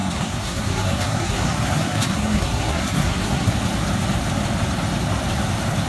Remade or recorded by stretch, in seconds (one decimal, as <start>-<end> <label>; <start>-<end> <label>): 0.0-3.5 remade; 3.5-5.9 recorded

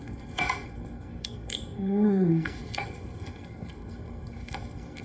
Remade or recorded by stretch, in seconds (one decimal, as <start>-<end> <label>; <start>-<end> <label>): 0.0-5.0 remade

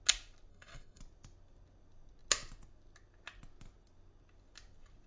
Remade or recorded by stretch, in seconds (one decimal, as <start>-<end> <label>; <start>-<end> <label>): 0.0-0.5 recorded; 0.5-1.0 remade; 1.0-5.1 recorded